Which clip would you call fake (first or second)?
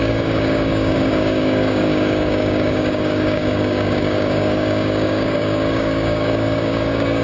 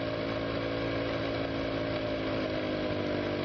first